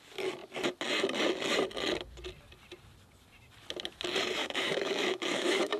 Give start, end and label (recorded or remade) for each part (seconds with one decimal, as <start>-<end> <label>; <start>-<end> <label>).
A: 0.0-4.4 recorded; 4.4-5.8 remade